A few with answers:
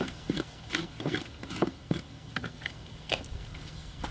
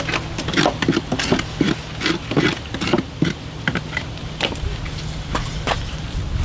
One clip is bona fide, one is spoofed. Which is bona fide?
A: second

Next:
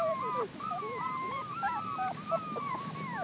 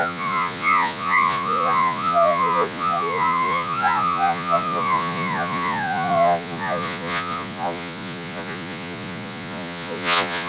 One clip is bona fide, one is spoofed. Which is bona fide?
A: first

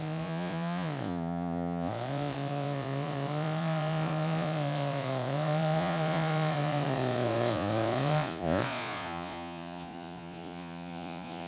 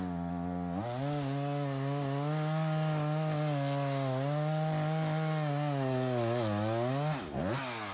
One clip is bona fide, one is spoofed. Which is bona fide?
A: second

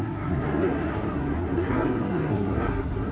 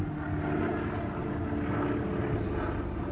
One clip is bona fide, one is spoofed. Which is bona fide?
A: second